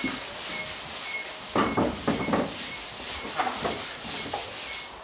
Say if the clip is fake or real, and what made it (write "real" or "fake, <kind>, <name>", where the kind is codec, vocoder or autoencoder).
real